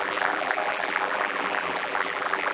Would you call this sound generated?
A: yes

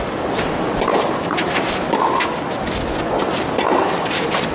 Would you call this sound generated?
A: no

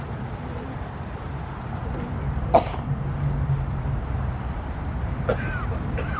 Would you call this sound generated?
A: yes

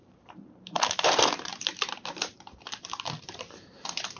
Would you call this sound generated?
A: yes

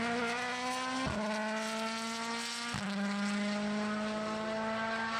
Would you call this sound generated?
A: no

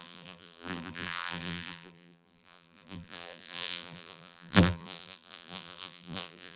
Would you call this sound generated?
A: yes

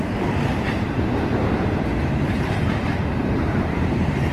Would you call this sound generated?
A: yes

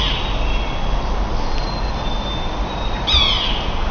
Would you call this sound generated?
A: no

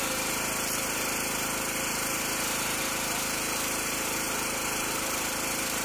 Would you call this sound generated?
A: no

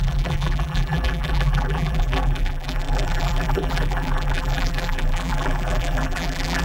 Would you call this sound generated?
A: yes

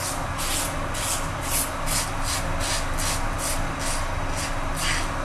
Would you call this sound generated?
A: no